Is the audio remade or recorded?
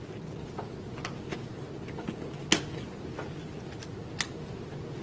recorded